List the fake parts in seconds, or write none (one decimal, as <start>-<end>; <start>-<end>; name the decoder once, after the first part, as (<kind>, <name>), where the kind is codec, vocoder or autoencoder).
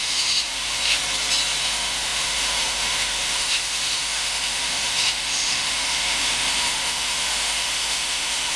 0.0-1.0 (autoencoder, DAC-VAE); 1.6-8.6